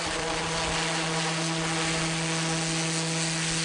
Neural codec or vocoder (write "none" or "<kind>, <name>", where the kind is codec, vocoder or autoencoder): none